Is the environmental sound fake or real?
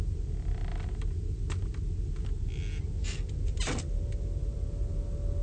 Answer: real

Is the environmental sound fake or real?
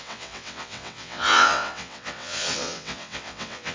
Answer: fake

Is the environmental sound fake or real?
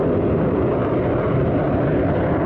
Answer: real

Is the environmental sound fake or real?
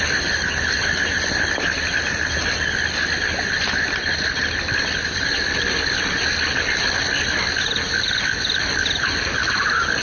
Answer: real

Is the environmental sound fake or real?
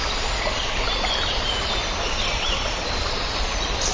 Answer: real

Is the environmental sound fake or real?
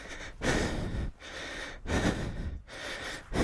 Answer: real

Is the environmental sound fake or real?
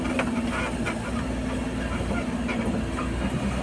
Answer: real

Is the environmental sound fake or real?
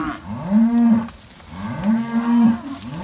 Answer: real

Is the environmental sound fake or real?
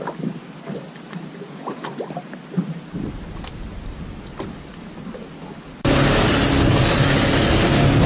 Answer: real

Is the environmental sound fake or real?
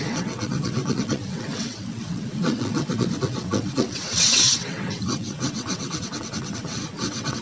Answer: fake